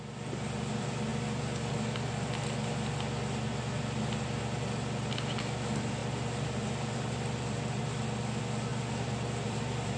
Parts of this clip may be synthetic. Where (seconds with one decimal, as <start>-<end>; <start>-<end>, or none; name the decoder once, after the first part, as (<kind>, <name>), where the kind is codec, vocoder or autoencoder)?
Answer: 6.0-7.8 (vocoder, BigVGAN v2); 8.7-10.0